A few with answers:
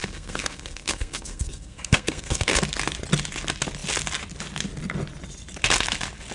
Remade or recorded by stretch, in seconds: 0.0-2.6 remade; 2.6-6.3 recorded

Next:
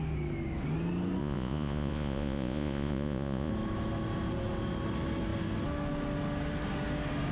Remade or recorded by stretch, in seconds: 0.0-1.2 recorded; 1.2-3.5 remade; 3.5-7.3 recorded

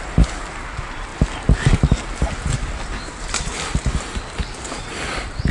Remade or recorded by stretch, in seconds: 0.0-5.5 recorded

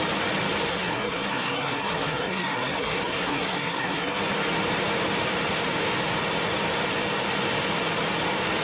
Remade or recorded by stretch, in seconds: 0.0-0.7 recorded; 0.7-4.2 remade; 4.2-8.6 recorded

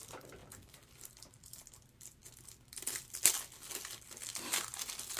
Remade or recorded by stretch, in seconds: 0.0-0.4 recorded; 0.4-1.7 remade; 1.7-4.3 recorded; 4.3-5.2 remade

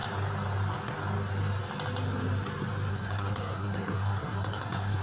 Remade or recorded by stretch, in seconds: 0.0-2.9 recorded; 2.9-5.0 remade

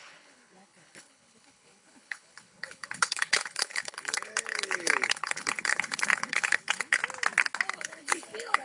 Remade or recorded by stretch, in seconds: 0.0-7.0 remade; 7.0-7.7 recorded; 7.7-8.6 remade

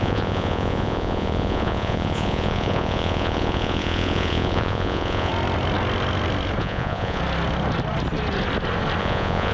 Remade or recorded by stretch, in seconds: 0.0-5.3 remade; 5.3-6.6 recorded; 6.6-7.2 remade; 7.2-9.0 recorded; 9.0-9.5 remade